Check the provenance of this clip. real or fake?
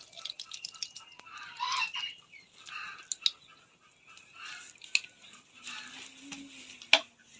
real